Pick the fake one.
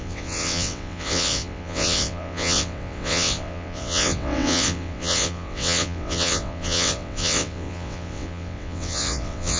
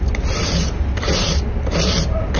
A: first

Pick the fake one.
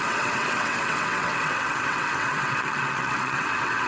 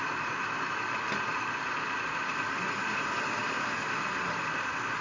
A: first